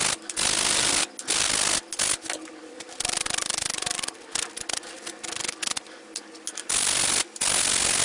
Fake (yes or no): no